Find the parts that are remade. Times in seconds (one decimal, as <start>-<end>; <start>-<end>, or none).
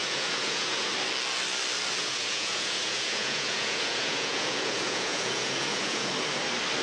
0.0-0.9; 2.0-6.1